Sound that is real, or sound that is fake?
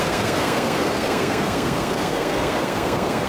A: fake